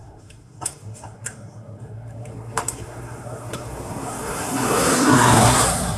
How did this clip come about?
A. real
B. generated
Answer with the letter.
B